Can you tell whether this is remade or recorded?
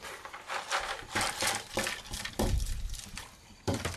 recorded